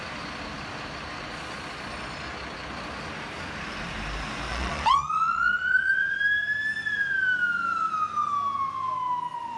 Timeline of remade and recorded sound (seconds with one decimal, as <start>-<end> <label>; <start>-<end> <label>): 0.0-4.5 recorded; 4.5-6.2 remade; 6.2-9.6 recorded